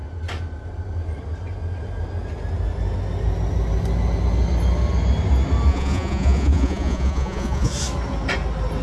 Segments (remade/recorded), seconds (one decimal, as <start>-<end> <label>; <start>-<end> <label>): 0.0-5.7 recorded; 5.7-7.7 remade; 7.7-8.8 recorded